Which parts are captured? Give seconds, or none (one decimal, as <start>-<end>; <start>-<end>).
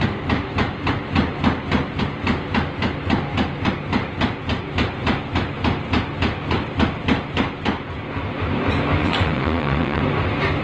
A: 0.0-9.0; 10.0-10.6